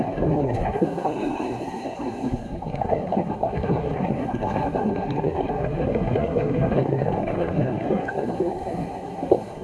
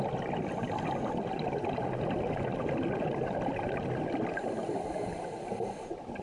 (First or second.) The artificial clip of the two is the first